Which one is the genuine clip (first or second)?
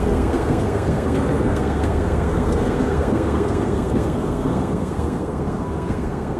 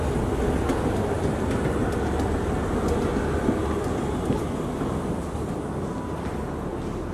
second